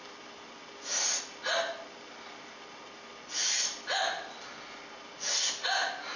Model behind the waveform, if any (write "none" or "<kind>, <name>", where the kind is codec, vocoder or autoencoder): none